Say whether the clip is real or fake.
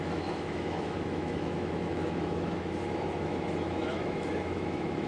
fake